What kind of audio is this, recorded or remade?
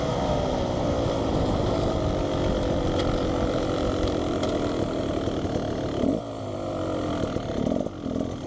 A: recorded